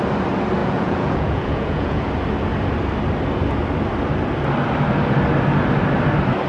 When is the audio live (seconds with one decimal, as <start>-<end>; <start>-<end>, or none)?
0.0-0.6; 2.1-6.5